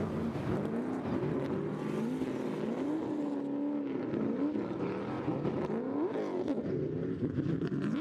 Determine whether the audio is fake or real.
real